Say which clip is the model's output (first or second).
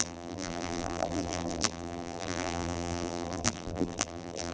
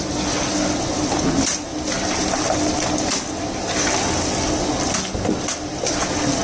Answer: first